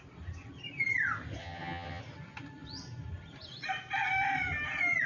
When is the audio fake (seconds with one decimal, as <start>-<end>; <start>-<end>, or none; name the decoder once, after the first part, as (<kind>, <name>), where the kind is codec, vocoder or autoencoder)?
1.4-2.0 (vocoder, HiFi-GAN)